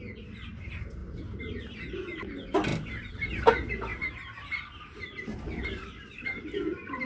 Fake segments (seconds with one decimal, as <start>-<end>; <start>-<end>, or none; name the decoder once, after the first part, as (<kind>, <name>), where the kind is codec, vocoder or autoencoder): 1.0-2.2 (vocoder, BigVGAN v2); 2.7-3.3; 3.9-7.1